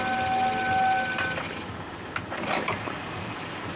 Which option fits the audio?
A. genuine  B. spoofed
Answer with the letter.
A